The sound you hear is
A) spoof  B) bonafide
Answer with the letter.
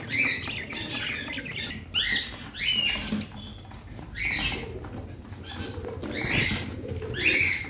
B